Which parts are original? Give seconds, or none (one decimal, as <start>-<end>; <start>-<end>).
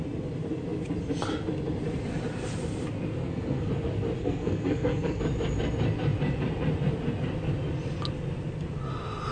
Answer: 0.0-3.2; 3.7-4.2; 5.2-9.3